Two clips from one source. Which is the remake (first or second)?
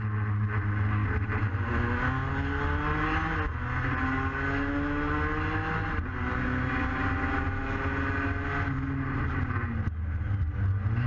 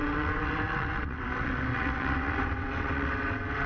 second